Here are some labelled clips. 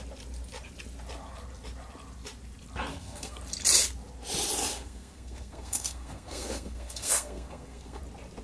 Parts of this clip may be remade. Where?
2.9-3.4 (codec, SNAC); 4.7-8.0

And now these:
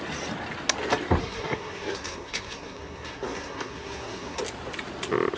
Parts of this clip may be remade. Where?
1.2-4.4 (codec, SNAC)

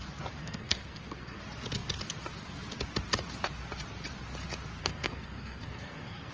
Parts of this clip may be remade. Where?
0.4-1.4 (codec, SNAC); 4.8-6.3

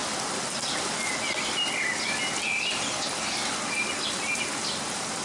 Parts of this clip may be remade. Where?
none